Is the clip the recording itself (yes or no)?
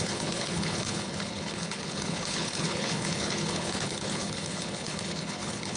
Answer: no